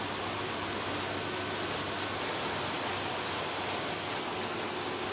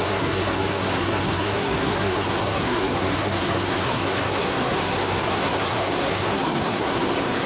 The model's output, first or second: second